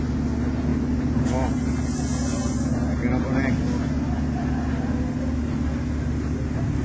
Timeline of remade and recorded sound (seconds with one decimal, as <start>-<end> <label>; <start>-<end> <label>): 0.0-6.8 recorded